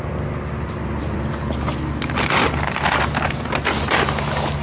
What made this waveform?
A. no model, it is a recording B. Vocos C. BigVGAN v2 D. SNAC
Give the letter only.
A